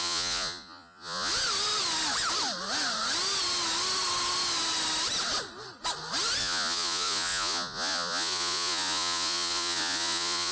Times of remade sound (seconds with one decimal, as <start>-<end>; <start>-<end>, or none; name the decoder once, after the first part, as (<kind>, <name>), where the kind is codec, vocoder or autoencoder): 0.0-1.3 (vocoder, Vocos); 6.4-10.5

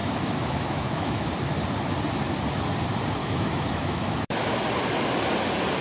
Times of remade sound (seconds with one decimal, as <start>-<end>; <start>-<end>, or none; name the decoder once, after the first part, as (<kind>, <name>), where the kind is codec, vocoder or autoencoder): 0.0-1.3 (autoencoder, DAC-VAE); 3.2-4.4

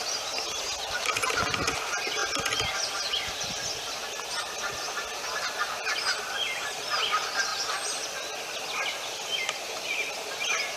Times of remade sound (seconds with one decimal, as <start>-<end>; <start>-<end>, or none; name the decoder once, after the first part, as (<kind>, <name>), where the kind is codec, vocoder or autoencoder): none

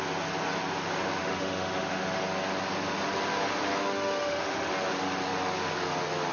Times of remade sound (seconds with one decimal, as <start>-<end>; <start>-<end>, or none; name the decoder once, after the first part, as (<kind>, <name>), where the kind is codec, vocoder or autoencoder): 1.2-2.2 (autoencoder, DAC-VAE); 3.8-4.7